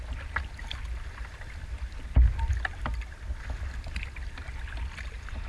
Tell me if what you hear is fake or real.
real